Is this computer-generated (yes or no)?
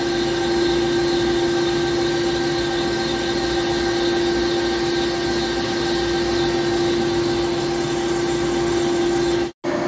no